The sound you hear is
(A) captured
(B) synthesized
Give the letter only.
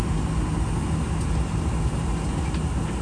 A